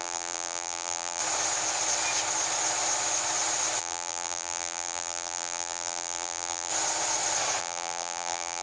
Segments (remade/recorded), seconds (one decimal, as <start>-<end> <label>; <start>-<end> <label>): 0.0-1.2 remade; 1.2-3.8 recorded; 3.8-6.7 remade; 6.7-7.6 recorded; 7.6-8.6 remade